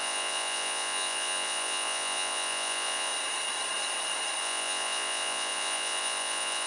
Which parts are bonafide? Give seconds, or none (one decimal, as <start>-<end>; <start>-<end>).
3.1-4.4